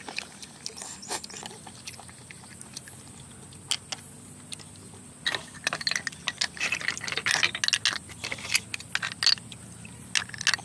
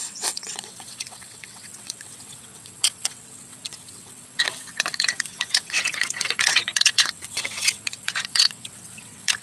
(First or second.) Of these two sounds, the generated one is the second